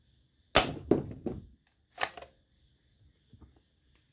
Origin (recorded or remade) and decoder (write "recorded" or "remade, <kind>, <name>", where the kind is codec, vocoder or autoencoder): recorded